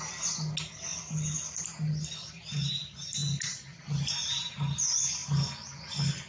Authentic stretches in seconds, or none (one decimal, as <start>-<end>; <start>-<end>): 0.0-6.3